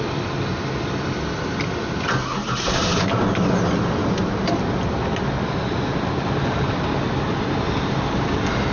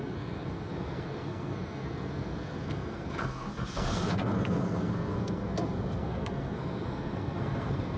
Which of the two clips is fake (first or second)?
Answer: second